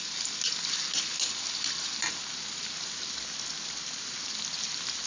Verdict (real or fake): real